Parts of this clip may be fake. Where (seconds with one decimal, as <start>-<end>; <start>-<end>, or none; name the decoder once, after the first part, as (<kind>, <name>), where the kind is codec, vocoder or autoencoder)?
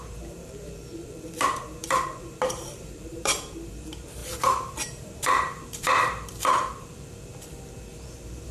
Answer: 0.0-8.5 (vocoder, BigVGAN v2)